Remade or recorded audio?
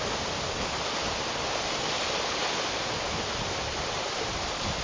recorded